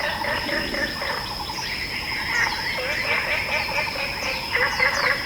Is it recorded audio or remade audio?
recorded